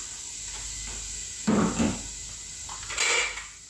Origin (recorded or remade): recorded